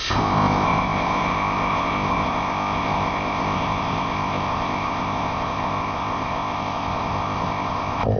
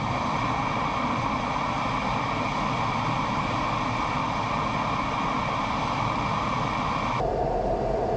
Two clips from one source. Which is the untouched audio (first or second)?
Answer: second